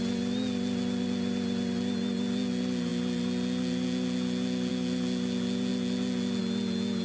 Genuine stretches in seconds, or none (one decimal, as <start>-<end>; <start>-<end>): 0.0-7.0